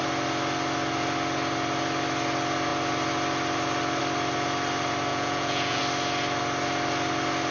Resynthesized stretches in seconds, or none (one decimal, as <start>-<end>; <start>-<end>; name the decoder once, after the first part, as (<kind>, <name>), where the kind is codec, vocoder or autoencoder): 5.1-5.8 (vocoder, Vocos)